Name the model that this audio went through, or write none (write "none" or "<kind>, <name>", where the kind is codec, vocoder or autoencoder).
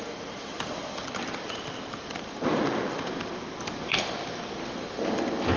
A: none